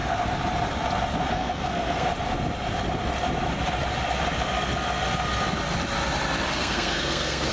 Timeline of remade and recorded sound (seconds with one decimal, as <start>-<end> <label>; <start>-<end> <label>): 0.0-1.3 recorded; 1.3-2.1 remade; 2.1-6.6 recorded; 6.6-7.5 remade